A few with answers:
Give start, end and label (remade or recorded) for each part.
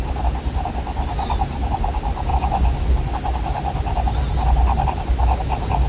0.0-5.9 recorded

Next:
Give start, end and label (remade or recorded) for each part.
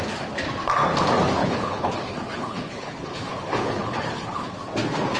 0.0-1.4 recorded; 1.4-4.5 remade; 4.5-5.2 recorded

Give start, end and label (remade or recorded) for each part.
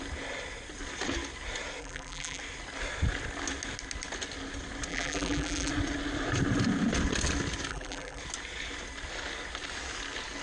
0.0-1.8 recorded; 1.8-2.4 remade; 2.4-4.9 recorded; 4.9-5.7 remade; 5.7-7.7 recorded; 7.7-8.2 remade; 8.2-10.4 recorded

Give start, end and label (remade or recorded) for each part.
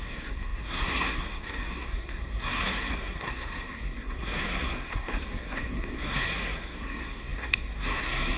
0.0-8.4 remade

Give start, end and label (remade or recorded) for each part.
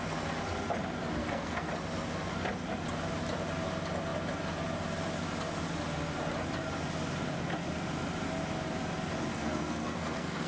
0.0-1.2 recorded; 1.2-1.7 remade; 1.7-9.3 recorded; 9.3-10.5 remade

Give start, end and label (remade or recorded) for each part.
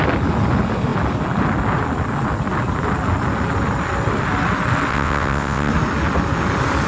0.0-4.9 recorded; 4.9-5.7 remade; 5.7-6.9 recorded